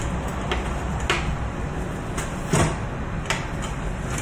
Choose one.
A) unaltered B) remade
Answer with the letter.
A